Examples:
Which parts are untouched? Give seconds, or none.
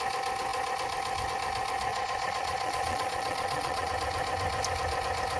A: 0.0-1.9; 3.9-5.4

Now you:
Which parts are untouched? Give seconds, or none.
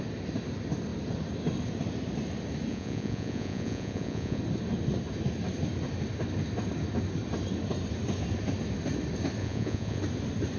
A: 0.0-2.7; 4.4-9.4; 10.0-10.6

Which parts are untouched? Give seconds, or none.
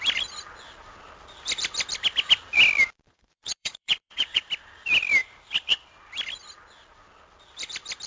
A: 0.0-3.1; 4.5-8.1